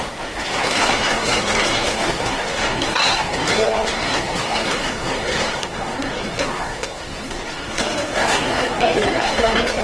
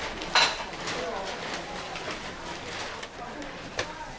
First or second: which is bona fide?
second